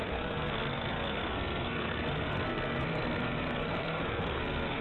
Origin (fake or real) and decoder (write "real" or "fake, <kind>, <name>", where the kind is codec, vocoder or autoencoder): fake, codec, SNAC